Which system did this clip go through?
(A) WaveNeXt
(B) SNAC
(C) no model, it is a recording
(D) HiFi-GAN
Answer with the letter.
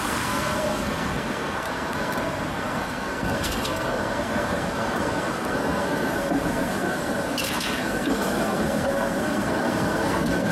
B